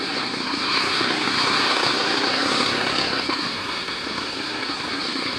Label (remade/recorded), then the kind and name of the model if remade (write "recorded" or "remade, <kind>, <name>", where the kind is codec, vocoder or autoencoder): remade, codec, SNAC